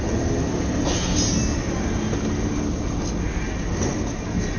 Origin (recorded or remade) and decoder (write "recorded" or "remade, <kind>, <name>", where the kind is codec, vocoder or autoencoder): recorded